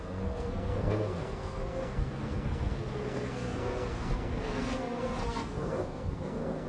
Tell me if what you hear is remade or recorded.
remade